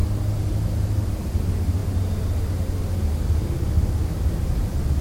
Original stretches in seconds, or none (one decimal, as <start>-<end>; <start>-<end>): 0.0-5.0